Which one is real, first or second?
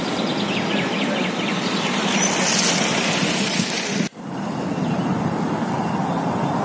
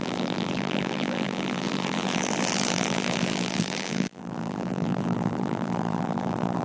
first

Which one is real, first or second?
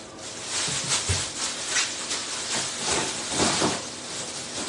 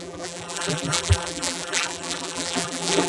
first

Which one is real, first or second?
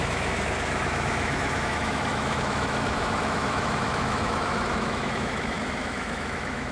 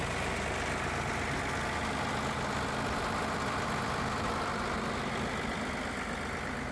second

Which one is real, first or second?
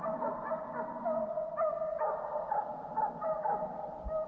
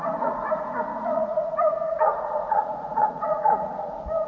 first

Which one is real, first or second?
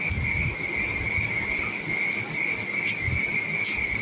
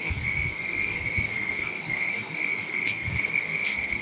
first